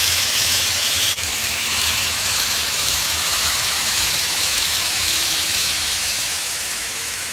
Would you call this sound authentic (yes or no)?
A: no